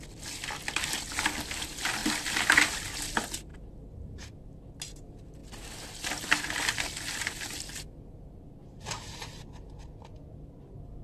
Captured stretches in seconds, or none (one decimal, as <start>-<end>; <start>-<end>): 0.0-11.0